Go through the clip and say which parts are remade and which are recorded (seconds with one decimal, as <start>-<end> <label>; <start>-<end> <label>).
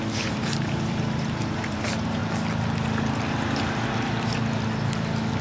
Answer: 0.0-2.2 remade; 2.2-5.4 recorded